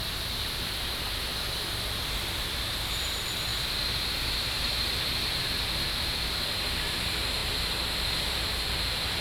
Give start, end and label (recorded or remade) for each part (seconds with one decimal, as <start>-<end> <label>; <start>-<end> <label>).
0.0-1.3 remade; 1.3-2.0 recorded; 2.0-9.2 remade